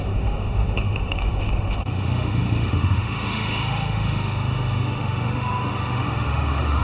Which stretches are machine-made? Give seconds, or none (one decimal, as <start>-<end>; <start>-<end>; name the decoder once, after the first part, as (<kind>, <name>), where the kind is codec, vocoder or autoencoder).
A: 0.0-6.8 (autoencoder, DAC-VAE)